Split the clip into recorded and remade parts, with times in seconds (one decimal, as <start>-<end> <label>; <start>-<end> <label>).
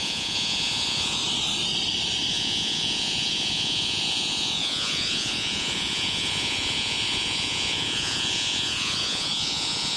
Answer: 0.0-1.2 remade; 1.2-2.3 recorded; 2.3-10.0 remade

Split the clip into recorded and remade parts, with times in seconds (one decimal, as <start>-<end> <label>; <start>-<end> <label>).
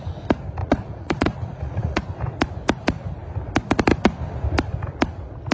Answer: 0.0-0.6 recorded; 0.6-2.0 remade; 2.0-5.5 recorded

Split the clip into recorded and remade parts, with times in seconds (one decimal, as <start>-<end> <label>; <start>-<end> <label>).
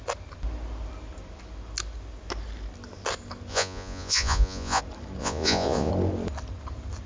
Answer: 0.0-3.5 recorded; 3.5-4.8 remade; 4.8-5.2 recorded; 5.2-5.9 remade; 5.9-7.1 recorded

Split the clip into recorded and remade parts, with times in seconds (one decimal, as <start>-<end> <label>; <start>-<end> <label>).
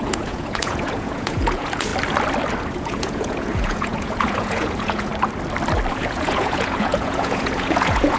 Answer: 0.0-1.9 remade; 1.9-2.7 recorded; 2.7-5.1 remade; 5.1-5.9 recorded; 5.9-8.2 remade